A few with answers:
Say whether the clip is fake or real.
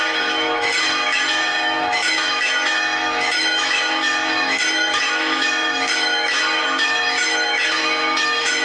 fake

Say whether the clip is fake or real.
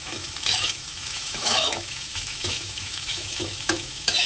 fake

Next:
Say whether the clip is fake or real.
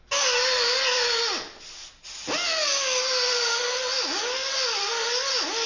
real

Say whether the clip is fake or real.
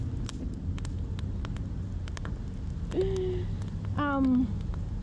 real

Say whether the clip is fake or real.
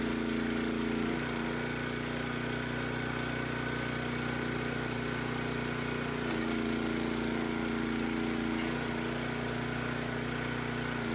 real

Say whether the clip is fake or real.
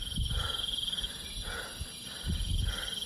real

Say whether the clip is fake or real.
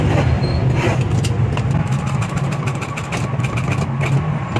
real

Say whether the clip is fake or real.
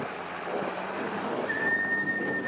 real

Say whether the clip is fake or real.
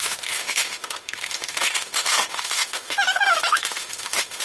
fake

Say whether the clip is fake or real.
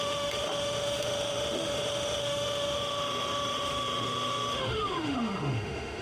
fake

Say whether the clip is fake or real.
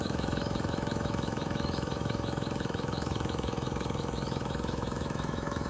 fake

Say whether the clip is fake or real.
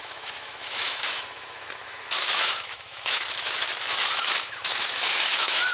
fake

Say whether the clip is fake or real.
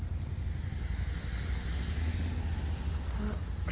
real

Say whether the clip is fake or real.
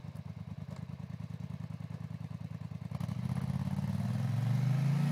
real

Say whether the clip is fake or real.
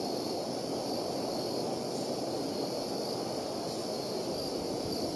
real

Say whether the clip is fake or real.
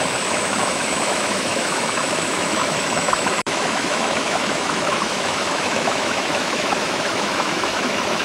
fake